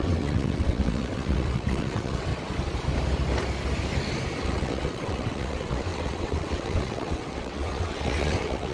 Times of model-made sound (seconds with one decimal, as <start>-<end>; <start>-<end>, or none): 0.0-2.3; 4.4-8.7